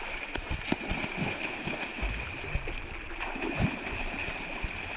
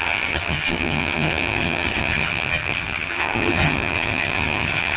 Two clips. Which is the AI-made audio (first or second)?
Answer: second